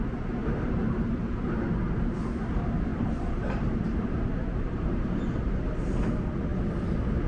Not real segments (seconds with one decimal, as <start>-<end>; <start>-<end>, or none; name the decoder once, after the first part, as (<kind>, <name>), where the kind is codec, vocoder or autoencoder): 0.4-1.6 (vocoder, BigVGAN v2); 2.9-5.2